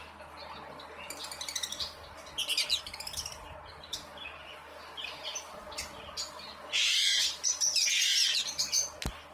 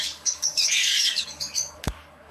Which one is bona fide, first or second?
first